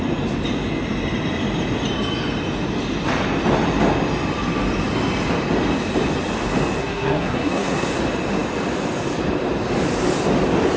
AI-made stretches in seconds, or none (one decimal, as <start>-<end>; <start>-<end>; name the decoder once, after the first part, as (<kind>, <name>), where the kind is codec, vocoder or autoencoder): 6.8-7.9 (codec, SNAC)